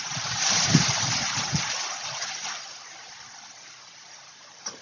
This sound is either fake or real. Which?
fake